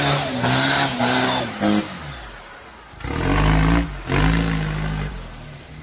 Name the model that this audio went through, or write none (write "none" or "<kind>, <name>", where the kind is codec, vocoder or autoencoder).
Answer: none